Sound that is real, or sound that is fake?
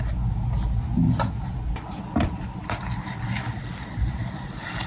real